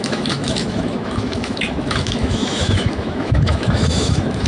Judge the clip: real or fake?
fake